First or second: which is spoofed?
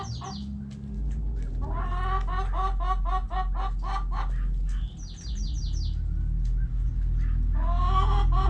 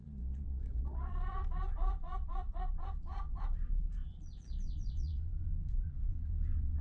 second